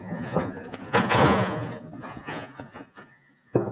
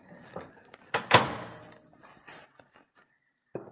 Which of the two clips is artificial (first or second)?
first